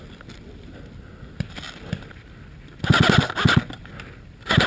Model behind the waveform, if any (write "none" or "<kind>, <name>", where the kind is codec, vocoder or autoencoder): none